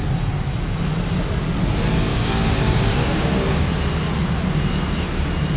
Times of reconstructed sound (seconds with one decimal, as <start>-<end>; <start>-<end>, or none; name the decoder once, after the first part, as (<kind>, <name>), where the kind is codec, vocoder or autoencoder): 2.1-3.6 (codec, DAC)